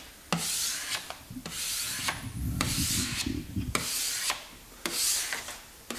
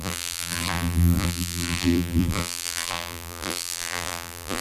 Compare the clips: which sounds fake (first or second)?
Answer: second